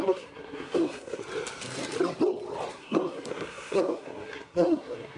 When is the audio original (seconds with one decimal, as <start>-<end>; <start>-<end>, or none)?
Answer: 1.2-2.7